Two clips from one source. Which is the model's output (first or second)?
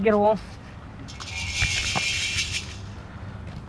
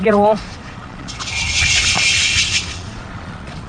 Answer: second